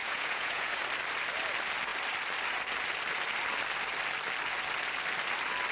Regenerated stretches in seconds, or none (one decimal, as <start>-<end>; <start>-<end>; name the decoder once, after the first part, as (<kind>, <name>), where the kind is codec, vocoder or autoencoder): 0.0-0.8 (vocoder, Vocos)